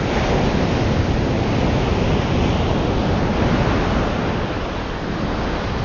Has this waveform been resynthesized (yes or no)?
no